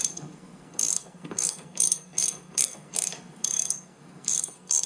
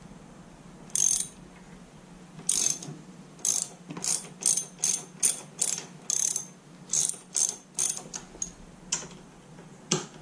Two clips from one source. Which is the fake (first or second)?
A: first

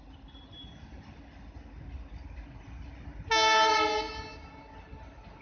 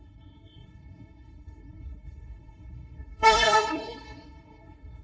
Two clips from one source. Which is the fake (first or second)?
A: second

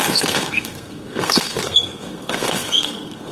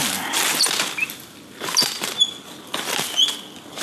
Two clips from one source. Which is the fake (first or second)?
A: first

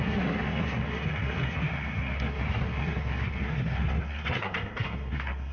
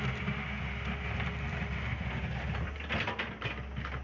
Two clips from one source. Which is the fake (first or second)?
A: first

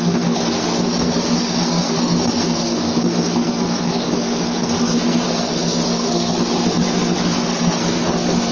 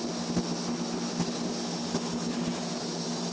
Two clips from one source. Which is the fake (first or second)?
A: first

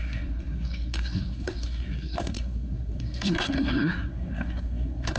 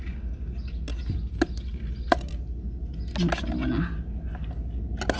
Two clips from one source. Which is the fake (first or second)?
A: first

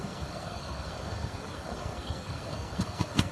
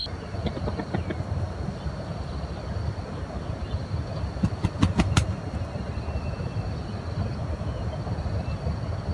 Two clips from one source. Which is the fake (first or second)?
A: first